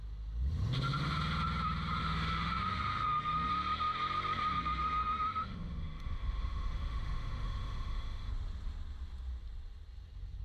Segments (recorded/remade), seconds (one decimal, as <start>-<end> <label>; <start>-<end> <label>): 0.0-2.0 recorded; 2.0-3.5 remade; 3.5-4.6 recorded; 4.6-8.3 remade; 8.3-10.4 recorded